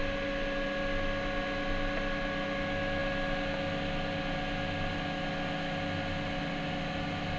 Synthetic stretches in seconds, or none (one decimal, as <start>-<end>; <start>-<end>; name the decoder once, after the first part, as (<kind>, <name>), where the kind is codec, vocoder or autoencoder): none